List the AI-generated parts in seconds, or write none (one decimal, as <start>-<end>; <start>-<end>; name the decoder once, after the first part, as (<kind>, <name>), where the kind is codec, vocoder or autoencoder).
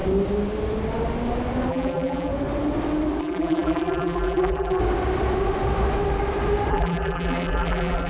1.7-2.3 (vocoder, BigVGAN v2); 3.2-4.8; 6.7-8.1